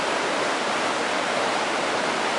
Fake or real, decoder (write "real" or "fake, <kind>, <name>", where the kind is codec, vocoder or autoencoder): fake, vocoder, BigVGAN v2